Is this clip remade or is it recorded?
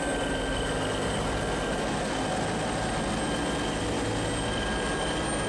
recorded